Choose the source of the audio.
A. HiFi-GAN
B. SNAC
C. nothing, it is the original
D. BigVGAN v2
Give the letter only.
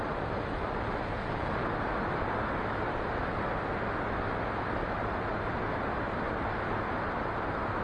C